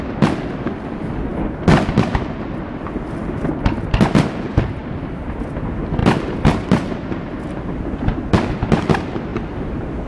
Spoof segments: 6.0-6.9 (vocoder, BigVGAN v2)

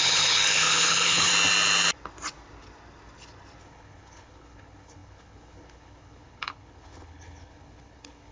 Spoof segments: 0.0-1.3 (codec, HILCodec); 3.6-8.3

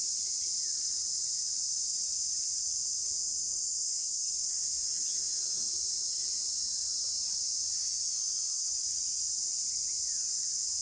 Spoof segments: 3.2-5.7 (autoencoder, DAC-VAE); 7.8-8.7

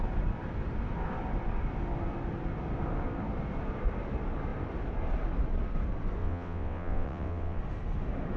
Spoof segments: 6.2-7.6 (vocoder, WaveNeXt)

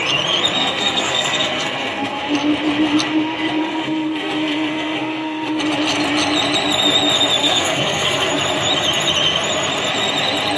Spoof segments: 0.6-2.2 (codec, SNAC); 3.6-5.6; 7.4-8.3